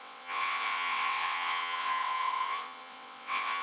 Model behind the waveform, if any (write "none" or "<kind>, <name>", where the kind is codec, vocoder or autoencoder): vocoder, WaveNeXt